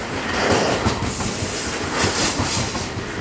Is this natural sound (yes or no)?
yes